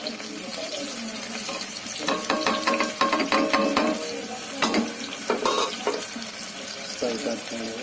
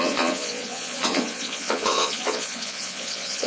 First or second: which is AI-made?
second